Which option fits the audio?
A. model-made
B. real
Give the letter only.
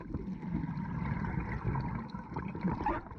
B